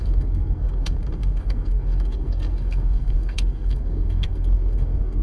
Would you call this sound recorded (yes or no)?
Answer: no